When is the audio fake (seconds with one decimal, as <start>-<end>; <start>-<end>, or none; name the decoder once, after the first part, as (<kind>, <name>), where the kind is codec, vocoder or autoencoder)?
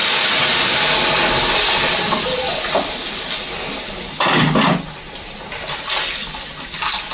none